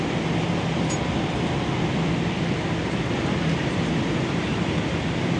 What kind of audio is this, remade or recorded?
recorded